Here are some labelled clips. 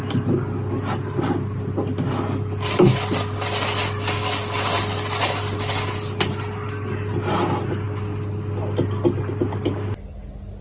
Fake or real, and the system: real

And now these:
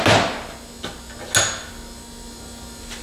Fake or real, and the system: real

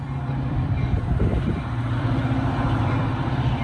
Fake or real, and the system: fake, vocoder, BigVGAN v2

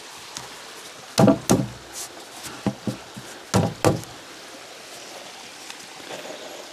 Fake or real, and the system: real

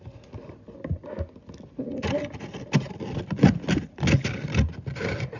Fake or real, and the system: real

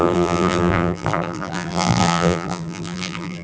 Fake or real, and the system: fake, vocoder, BigVGAN v2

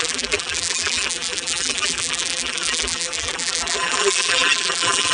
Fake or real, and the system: fake, vocoder, BigVGAN v2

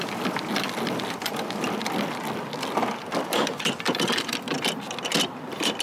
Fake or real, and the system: fake, vocoder, BigVGAN v2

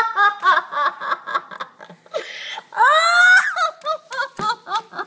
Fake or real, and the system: real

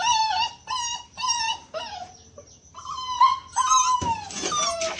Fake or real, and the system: real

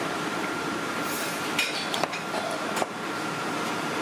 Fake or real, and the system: fake, vocoder, BigVGAN v2